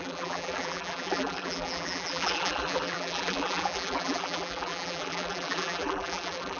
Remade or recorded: remade